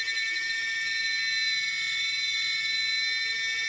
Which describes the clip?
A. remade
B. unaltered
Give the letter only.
B